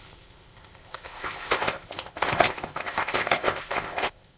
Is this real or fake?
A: fake